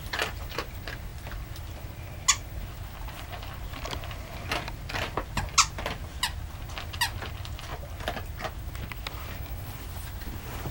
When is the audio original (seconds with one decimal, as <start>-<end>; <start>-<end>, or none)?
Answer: 0.0-10.7